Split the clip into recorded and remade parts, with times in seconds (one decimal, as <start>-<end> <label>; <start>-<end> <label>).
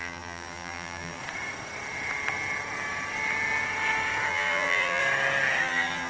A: 0.0-1.2 remade; 1.2-4.3 recorded; 4.3-5.0 remade; 5.0-5.6 recorded; 5.6-6.1 remade